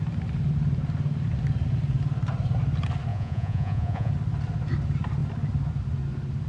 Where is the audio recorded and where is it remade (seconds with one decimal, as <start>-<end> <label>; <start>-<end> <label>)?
0.0-3.1 recorded; 3.1-4.1 remade; 4.1-6.5 recorded